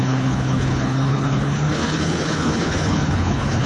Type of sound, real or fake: fake